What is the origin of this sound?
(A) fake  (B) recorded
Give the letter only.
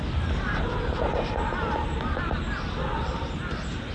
B